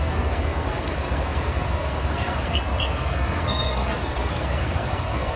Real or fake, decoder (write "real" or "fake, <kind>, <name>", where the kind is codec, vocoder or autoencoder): fake, codec, SNAC